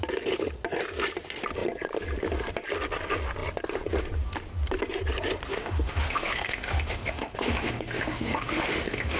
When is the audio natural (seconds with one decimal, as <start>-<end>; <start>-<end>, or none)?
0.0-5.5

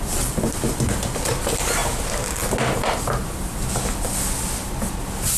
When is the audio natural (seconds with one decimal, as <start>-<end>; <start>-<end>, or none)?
1.8-5.0

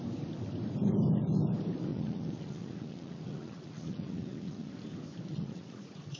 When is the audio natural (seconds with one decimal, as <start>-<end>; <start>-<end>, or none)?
0.0-1.9; 4.7-5.3